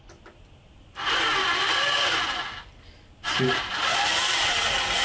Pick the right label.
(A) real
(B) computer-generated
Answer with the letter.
A